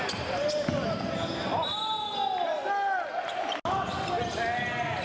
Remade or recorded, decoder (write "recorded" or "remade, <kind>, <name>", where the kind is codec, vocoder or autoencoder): recorded